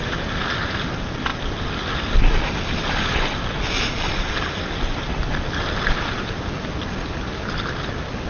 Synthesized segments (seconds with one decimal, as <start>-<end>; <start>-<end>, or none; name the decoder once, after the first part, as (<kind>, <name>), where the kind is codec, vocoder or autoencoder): none